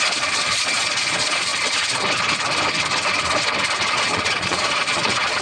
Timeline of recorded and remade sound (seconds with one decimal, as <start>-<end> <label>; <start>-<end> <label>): 0.0-1.5 remade; 1.5-3.9 recorded; 3.9-5.4 remade